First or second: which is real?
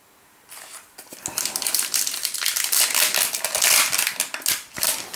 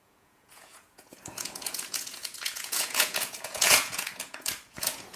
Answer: first